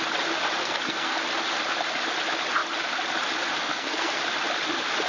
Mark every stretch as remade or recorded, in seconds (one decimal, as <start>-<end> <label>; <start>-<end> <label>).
0.0-0.6 recorded; 0.6-1.2 remade; 1.2-3.7 recorded; 3.7-4.2 remade; 4.2-5.1 recorded